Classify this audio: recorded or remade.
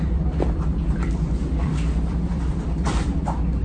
remade